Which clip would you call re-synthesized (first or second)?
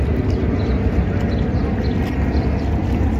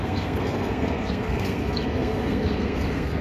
second